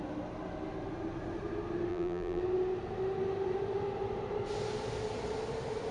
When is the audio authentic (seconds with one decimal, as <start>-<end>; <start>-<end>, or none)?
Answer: 0.0-1.9; 2.4-5.9